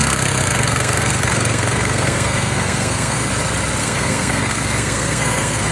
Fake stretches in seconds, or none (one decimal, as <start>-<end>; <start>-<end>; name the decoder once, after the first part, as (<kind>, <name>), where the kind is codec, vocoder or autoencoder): 0.0-3.3 (codec, SNAC); 3.8-5.7